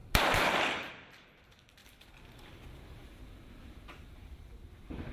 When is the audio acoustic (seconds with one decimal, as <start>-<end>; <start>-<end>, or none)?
0.9-1.8; 4.5-5.1